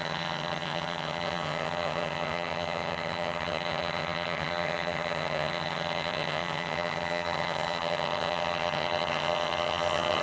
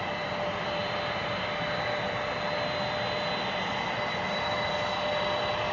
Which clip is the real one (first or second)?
second